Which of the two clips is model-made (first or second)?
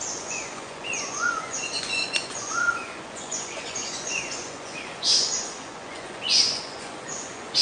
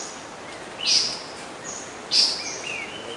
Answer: first